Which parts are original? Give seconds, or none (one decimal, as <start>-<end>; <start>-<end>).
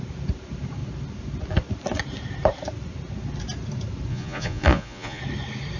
0.0-4.1; 5.2-5.8